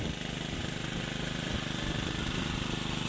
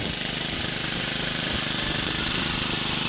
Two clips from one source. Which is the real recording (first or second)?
first